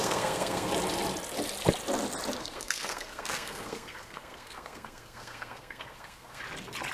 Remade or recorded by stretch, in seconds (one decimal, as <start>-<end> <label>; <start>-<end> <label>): 0.0-0.7 remade; 0.7-2.4 recorded; 2.4-6.4 remade; 6.4-6.9 recorded